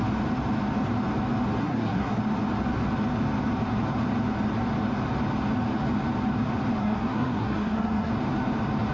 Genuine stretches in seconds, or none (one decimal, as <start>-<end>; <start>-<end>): 0.0-1.6; 2.2-6.8; 8.1-8.9